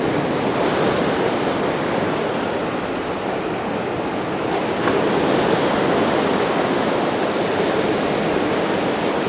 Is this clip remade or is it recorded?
recorded